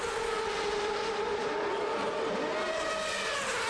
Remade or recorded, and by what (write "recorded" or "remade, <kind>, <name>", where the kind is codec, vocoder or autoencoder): recorded